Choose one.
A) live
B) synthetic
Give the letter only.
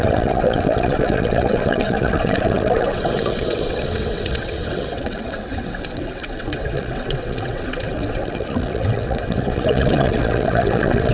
B